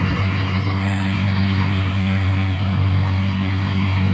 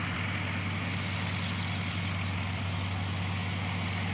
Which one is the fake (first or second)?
first